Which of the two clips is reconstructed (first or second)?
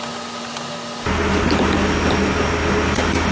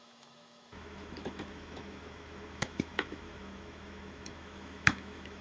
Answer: second